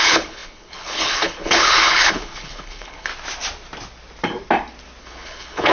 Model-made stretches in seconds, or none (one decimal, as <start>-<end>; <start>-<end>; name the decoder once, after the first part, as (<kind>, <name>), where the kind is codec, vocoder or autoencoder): 0.0-3.1 (codec, HILCodec); 5.0-5.7